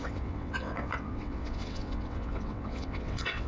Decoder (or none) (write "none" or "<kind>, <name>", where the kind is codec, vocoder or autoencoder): vocoder, WaveNeXt